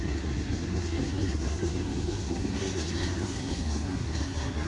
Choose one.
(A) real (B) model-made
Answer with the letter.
B